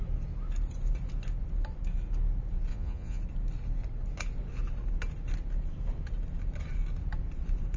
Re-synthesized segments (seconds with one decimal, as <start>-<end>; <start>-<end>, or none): 2.7-3.2